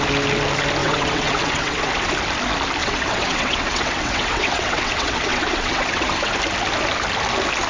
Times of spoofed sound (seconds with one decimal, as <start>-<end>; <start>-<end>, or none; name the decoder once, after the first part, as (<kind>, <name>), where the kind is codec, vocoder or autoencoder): 0.8-2.1 (vocoder, WaveNeXt); 2.8-6.4